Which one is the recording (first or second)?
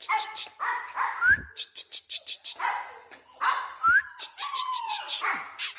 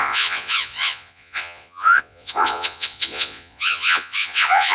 first